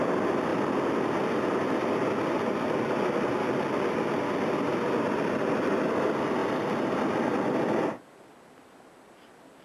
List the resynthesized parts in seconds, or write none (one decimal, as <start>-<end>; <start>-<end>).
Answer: none